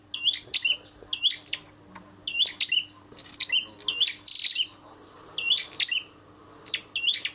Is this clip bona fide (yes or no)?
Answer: yes